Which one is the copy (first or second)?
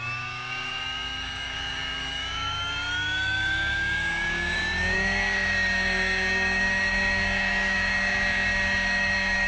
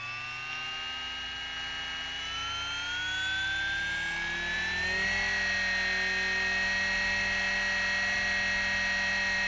first